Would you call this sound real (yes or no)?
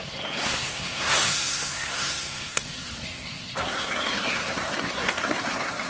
no